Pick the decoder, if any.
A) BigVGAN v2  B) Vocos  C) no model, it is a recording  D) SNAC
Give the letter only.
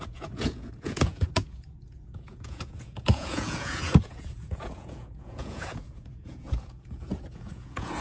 B